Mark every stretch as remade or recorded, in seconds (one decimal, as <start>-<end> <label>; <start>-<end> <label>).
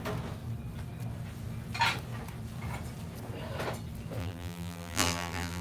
0.0-4.2 recorded; 4.2-5.6 remade